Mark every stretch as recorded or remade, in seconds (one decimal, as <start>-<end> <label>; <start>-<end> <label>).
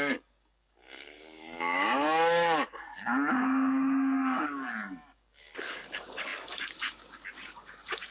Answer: 0.0-8.1 remade